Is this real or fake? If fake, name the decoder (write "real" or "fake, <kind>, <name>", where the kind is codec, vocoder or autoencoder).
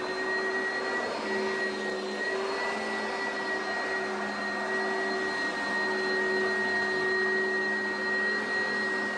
real